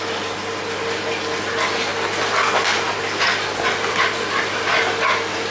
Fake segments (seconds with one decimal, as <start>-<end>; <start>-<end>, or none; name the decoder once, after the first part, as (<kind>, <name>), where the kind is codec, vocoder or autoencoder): none